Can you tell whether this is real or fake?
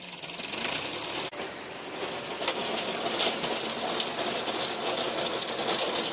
real